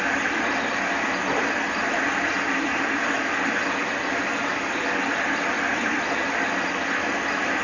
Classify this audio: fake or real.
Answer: real